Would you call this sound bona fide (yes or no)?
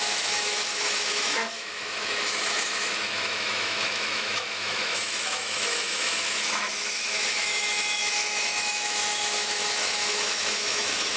no